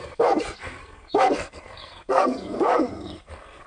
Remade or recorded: remade